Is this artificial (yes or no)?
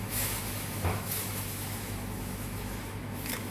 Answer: yes